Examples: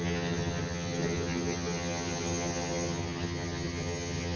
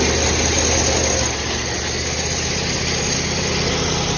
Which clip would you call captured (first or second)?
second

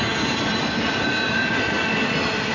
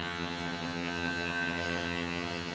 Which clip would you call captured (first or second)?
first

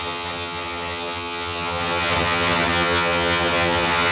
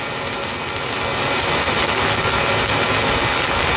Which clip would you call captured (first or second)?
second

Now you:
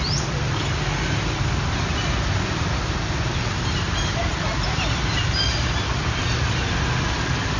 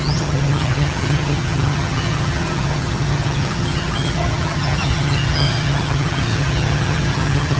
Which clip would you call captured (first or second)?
first